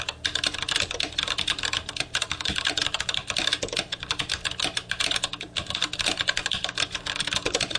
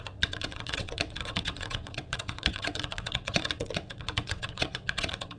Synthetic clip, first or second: second